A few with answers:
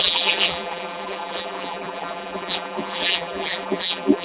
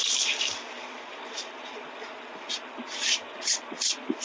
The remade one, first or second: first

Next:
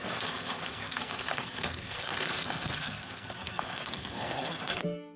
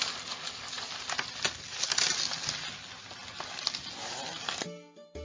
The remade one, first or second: first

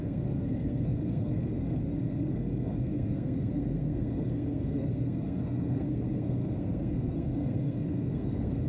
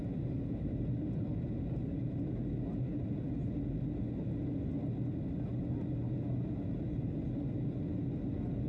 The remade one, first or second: first